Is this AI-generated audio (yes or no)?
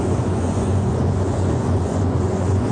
yes